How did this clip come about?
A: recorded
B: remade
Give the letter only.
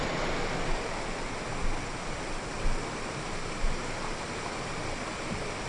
A